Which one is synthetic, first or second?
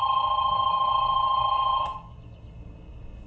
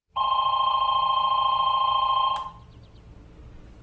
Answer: first